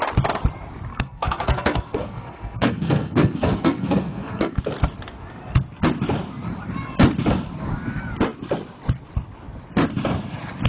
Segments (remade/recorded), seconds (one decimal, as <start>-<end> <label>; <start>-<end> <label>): 0.0-0.9 recorded; 0.9-4.6 remade; 4.6-10.7 recorded